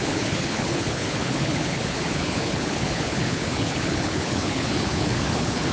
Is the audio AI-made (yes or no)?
yes